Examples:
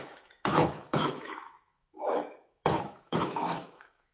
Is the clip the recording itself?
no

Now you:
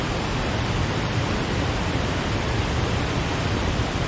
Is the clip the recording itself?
yes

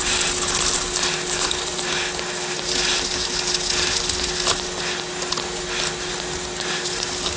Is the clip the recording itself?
yes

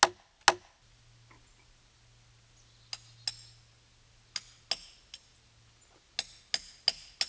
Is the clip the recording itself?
yes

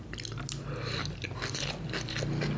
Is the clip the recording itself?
yes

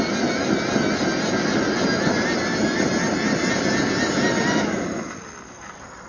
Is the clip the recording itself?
yes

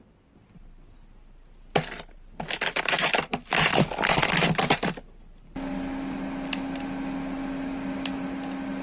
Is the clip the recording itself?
yes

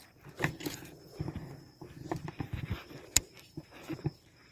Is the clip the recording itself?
no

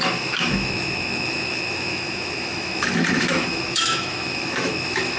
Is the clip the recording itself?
no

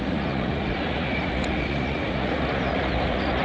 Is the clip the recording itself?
no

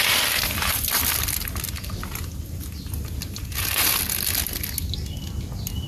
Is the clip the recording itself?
yes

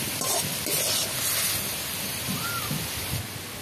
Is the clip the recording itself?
yes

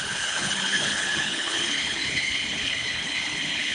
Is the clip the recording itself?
no